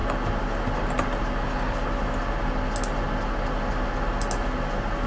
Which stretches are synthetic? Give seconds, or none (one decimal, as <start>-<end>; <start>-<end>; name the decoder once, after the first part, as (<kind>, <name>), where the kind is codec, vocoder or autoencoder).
none